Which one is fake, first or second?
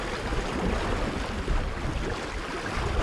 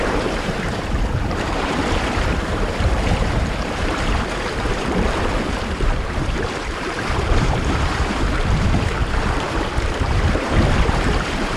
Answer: second